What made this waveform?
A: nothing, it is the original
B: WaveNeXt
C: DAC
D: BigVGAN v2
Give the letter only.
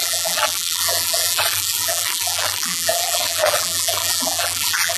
D